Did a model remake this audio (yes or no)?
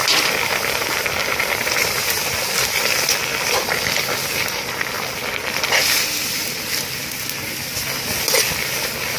no